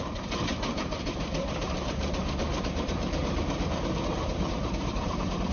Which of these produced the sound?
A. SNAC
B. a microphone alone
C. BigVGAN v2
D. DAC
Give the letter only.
C